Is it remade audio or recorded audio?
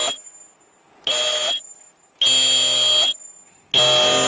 recorded